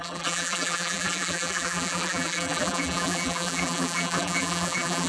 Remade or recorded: remade